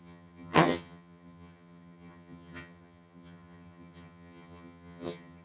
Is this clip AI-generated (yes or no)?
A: yes